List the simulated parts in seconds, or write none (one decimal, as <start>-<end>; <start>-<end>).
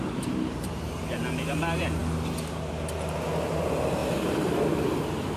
4.0-5.4